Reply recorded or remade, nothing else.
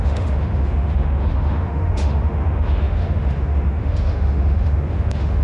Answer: remade